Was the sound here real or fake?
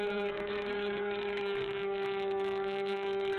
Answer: fake